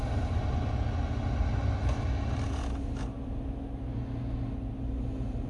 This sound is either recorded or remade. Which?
recorded